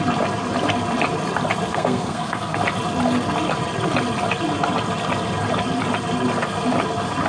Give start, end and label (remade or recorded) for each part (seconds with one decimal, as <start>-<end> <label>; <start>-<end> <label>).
0.0-1.7 recorded; 1.7-2.6 remade; 2.6-7.3 recorded